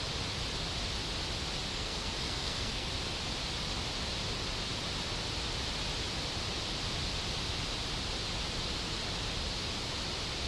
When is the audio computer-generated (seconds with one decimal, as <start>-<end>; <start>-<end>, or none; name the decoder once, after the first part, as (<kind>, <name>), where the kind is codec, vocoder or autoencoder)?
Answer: 1.7-2.9 (codec, SNAC)